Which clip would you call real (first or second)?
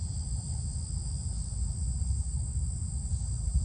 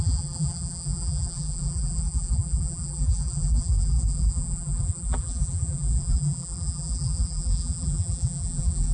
first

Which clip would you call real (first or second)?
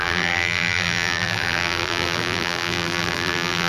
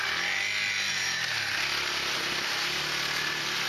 second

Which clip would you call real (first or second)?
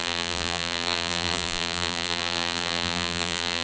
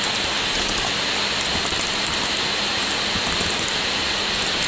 second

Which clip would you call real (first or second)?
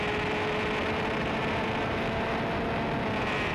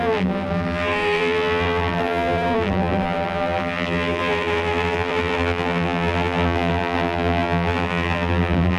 first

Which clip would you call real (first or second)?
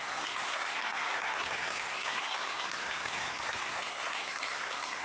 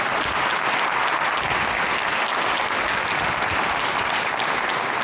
second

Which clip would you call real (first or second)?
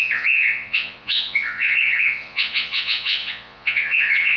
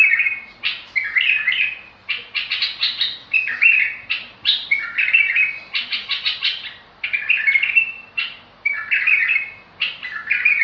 second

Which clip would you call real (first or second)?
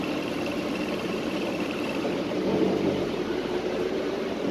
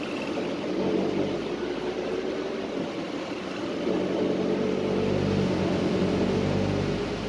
second